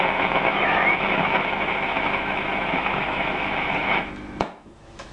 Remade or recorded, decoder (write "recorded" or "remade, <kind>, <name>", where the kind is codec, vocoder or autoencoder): remade, autoencoder, DAC-VAE